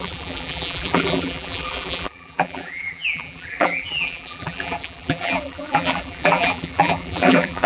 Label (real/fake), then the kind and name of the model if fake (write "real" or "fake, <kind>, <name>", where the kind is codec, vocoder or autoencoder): fake, vocoder, BigVGAN v2